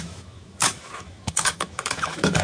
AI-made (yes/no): yes